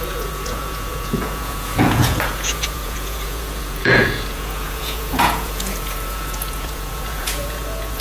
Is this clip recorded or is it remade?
remade